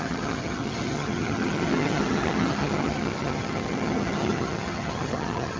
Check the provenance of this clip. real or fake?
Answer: fake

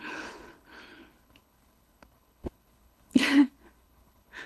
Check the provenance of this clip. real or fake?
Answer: fake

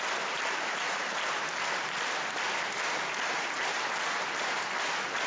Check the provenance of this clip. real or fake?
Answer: real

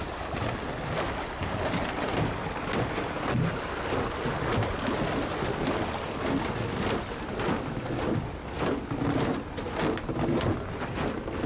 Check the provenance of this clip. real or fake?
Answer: real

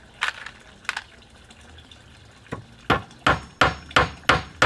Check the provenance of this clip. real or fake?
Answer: real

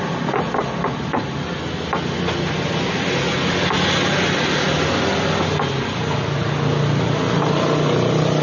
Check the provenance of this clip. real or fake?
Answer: real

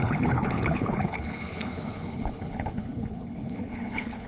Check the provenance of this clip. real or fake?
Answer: fake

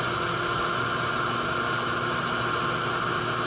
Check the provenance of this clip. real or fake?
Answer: real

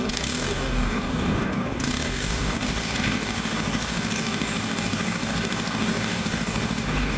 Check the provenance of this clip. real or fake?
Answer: fake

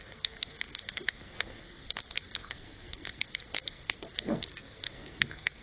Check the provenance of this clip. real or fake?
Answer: fake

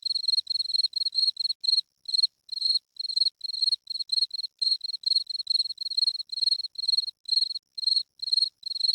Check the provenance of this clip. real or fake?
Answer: real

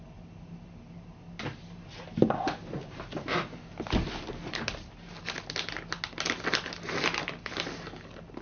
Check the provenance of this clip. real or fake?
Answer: real